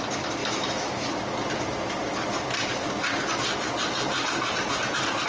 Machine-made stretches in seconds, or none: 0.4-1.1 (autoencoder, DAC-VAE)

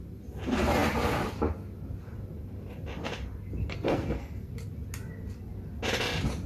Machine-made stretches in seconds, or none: 3.6-4.5 (codec, SNAC)

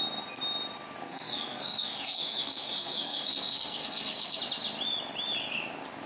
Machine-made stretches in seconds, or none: 1.1-4.4 (codec, SNAC)

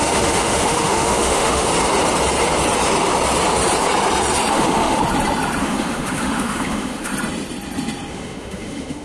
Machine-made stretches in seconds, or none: 0.0-1.7 (autoencoder, DAC-VAE); 4.5-5.0; 5.6-7.1; 8.1-9.0

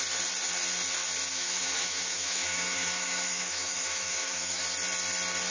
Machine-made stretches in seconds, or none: 1.3-4.6 (autoencoder, DAC-VAE)

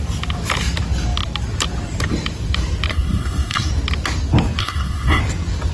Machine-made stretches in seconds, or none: 2.9-3.7 (codec, SNAC); 4.6-5.2

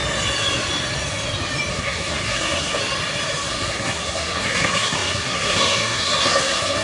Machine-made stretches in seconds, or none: 1.7-2.8 (codec, SNAC); 3.5-6.8

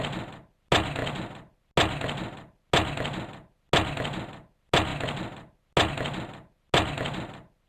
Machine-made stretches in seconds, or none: none